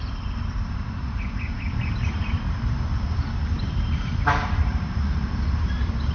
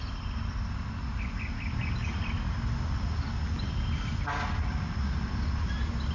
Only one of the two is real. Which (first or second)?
second